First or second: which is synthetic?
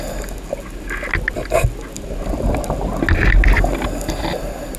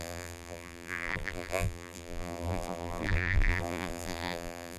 second